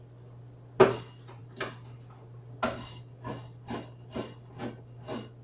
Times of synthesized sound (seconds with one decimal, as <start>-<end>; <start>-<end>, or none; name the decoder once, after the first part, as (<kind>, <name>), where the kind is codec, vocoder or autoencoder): none